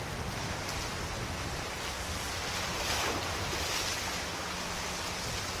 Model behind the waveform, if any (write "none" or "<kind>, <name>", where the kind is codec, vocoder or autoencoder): none